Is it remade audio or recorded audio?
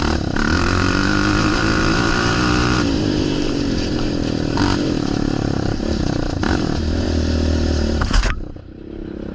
remade